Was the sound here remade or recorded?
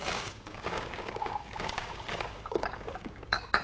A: remade